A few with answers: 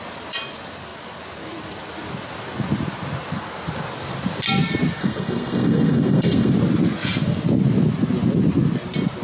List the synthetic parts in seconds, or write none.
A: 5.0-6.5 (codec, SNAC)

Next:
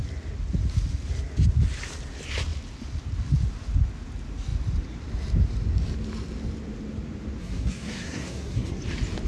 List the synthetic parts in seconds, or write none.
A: 7.4-8.8 (codec, SNAC)

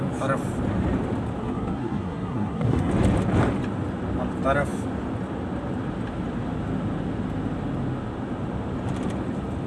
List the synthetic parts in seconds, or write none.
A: 1.4-2.9 (codec, SNAC)